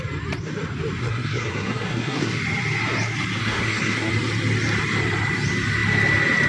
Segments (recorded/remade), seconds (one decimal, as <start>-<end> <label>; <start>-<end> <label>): 0.0-1.0 recorded; 1.0-2.4 remade; 2.4-3.4 recorded; 3.4-4.1 remade; 4.1-6.5 recorded